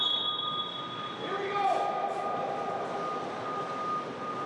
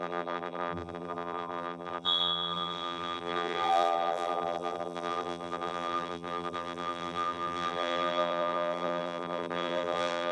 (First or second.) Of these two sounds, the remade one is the second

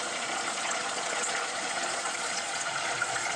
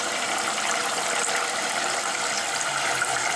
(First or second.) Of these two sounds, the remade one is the first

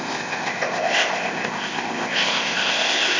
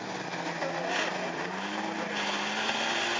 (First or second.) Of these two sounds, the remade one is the first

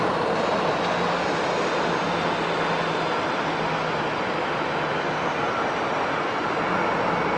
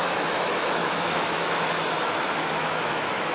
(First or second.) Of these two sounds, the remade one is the second